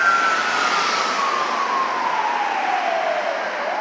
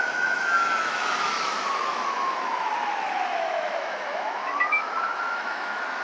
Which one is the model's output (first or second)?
second